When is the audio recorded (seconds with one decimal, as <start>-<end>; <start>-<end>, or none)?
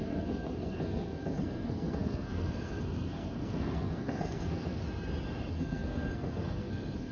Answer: 4.8-5.5